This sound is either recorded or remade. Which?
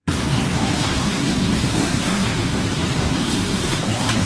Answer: remade